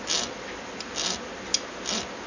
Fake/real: real